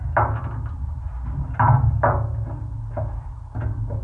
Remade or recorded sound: recorded